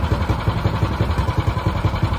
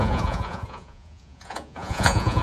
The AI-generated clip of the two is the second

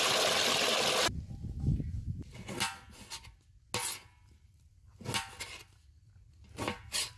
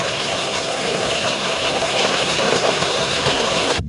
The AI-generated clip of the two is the second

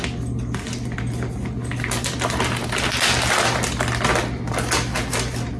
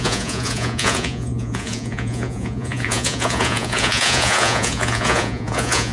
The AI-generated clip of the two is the second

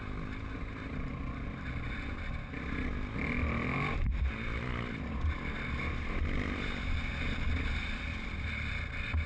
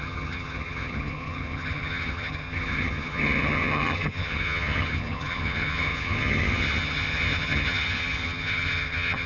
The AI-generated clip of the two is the second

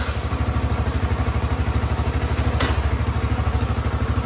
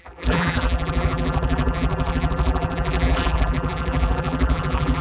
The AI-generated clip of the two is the second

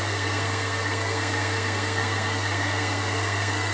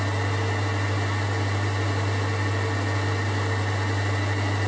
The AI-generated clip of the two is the first